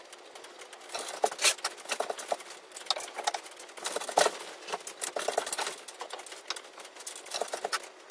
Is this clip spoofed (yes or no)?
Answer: no